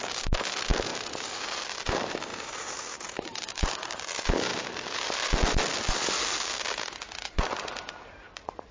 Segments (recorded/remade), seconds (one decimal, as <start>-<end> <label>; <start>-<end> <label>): 0.0-2.3 recorded; 2.3-3.7 remade; 3.7-8.7 recorded